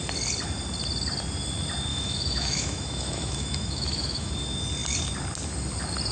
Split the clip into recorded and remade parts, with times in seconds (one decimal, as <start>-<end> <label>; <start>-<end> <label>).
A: 0.0-1.9 recorded; 1.9-4.3 remade; 4.3-6.1 recorded